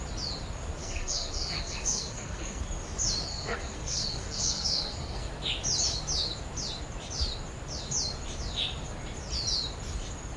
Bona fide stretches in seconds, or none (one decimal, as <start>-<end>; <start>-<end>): 0.0-0.8; 2.6-3.3; 5.3-10.4